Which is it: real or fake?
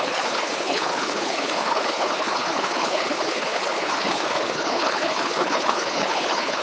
fake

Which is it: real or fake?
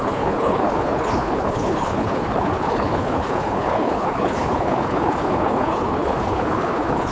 fake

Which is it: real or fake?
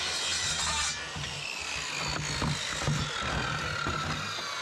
real